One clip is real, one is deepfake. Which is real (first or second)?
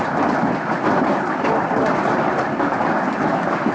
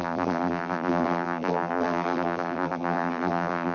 first